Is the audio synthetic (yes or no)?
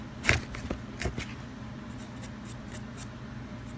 no